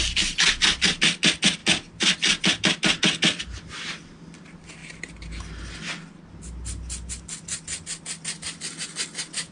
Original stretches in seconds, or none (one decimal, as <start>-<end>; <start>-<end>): 0.0-9.5